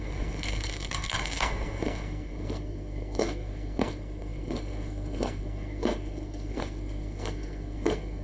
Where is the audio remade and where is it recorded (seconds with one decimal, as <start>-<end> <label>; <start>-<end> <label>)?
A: 0.0-8.2 remade